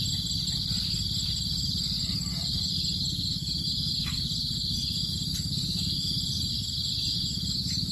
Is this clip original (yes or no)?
yes